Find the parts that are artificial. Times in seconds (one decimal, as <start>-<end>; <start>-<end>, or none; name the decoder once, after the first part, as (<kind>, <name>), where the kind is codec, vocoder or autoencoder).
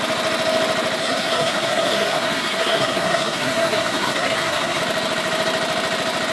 1.0-4.8 (codec, SNAC)